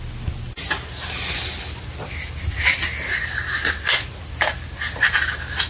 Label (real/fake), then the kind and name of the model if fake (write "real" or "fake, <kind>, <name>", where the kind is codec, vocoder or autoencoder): real